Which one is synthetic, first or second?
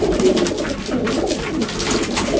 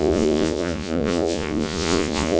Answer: second